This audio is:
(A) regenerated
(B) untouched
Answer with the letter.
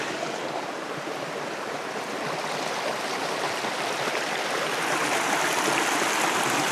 A